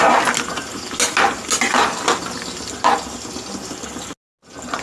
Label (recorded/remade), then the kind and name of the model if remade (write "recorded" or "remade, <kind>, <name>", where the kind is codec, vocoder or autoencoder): recorded